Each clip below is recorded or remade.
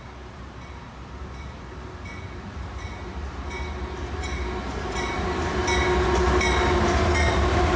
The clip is recorded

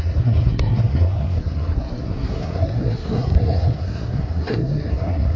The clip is remade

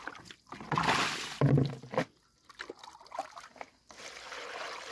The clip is recorded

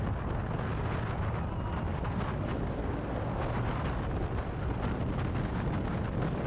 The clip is recorded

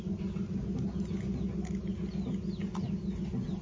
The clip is recorded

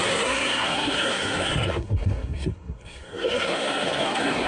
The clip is remade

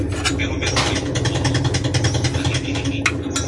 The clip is recorded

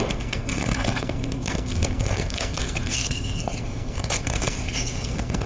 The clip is remade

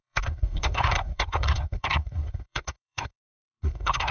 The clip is remade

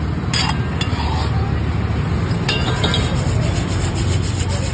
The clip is recorded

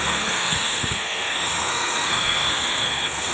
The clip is remade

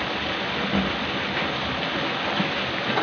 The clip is recorded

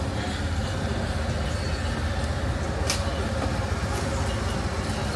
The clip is recorded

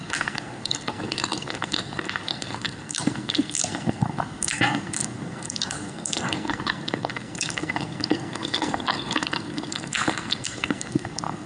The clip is remade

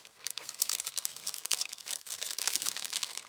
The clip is remade